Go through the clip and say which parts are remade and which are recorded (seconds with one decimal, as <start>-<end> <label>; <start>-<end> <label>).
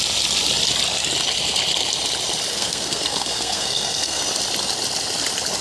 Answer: 0.0-2.5 recorded; 2.5-4.2 remade; 4.2-5.6 recorded